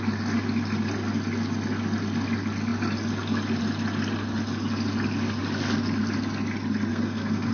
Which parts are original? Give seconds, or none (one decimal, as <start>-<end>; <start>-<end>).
0.0-6.9